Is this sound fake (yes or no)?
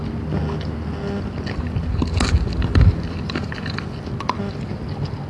no